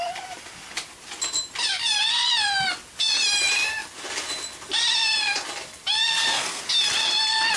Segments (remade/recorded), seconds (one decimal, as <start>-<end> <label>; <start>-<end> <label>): 0.0-6.0 recorded; 6.0-6.6 remade; 6.6-7.6 recorded